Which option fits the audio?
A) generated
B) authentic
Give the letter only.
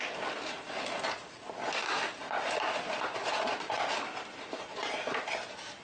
B